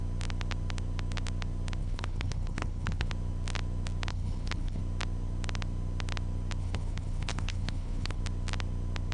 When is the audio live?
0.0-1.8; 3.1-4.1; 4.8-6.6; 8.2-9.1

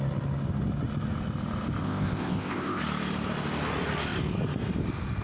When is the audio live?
0.0-1.8; 2.8-5.2